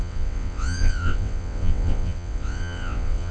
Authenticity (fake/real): fake